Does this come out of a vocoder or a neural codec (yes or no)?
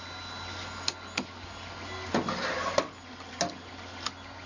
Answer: no